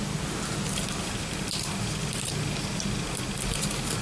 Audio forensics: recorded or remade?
recorded